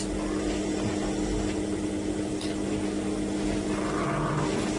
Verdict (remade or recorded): recorded